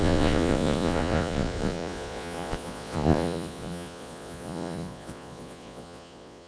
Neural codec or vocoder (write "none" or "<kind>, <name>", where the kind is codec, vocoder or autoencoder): vocoder, Vocos